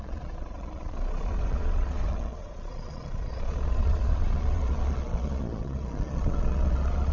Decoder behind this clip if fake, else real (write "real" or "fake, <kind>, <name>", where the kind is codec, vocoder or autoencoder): fake, vocoder, Vocos